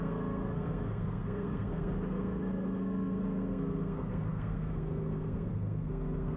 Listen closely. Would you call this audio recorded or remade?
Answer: remade